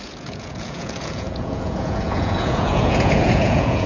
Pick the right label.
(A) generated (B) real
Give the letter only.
A